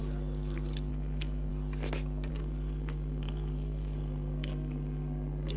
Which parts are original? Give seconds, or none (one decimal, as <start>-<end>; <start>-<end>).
0.0-0.9; 1.5-2.3